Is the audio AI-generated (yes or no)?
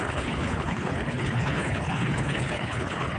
yes